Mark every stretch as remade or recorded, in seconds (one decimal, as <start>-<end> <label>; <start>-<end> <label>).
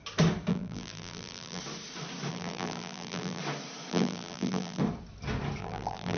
0.0-0.5 recorded; 0.5-1.6 remade; 1.6-2.3 recorded; 2.3-3.4 remade; 3.4-3.9 recorded; 3.9-4.8 remade; 4.8-5.6 recorded; 5.6-6.2 remade